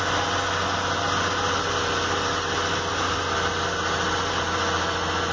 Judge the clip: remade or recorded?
recorded